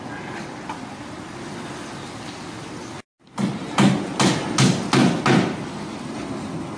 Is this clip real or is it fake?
real